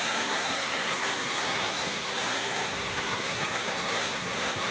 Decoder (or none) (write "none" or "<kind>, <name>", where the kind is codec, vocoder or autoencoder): codec, SNAC